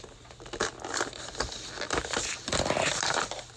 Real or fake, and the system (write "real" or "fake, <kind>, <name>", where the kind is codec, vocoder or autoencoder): real